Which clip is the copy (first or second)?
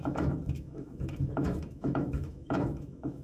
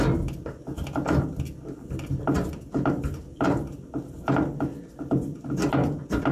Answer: first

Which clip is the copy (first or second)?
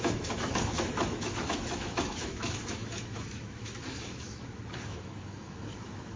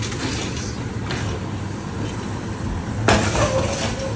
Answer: first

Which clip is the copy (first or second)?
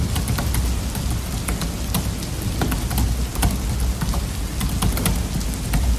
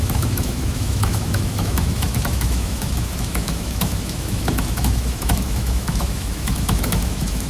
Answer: second